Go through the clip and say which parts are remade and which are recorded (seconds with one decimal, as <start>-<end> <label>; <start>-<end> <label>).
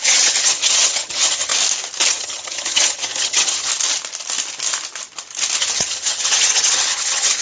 0.0-1.5 remade; 1.5-2.1 recorded; 2.1-3.7 remade; 3.7-5.6 recorded; 5.6-7.4 remade